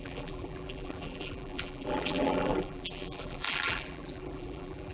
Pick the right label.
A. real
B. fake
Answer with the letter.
B